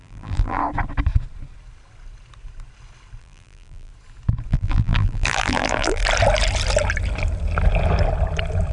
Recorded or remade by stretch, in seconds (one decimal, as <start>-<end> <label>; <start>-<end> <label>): 0.0-0.6 remade; 0.6-3.2 recorded; 3.2-3.9 remade; 3.9-4.5 recorded; 4.5-6.0 remade; 6.0-8.7 recorded